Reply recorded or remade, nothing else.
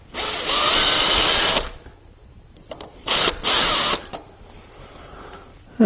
recorded